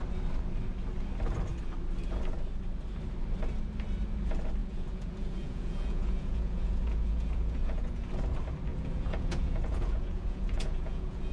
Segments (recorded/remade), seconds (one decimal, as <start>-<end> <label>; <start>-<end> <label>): 0.0-4.6 recorded; 4.6-8.1 remade; 8.1-8.7 recorded; 8.7-11.3 remade